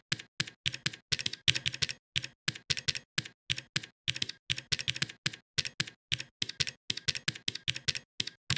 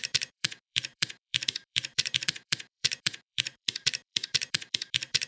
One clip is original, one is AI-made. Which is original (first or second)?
first